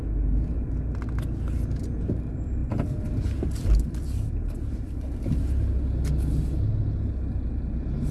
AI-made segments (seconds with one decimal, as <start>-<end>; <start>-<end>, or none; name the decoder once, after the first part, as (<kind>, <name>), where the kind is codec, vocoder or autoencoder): none